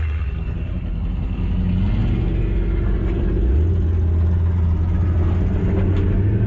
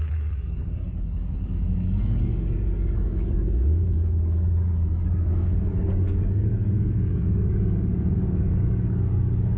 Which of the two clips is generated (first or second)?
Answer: second